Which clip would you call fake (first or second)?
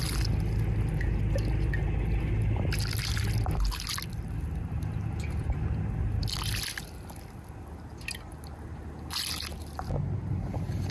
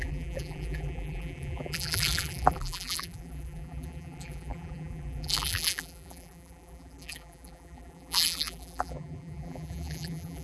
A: second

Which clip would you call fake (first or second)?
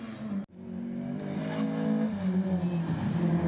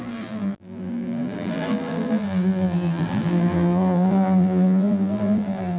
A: second